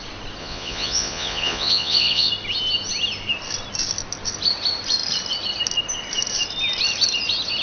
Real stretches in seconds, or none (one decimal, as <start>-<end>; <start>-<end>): 0.0-0.4; 2.3-7.6